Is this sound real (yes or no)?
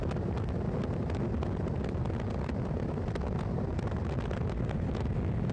yes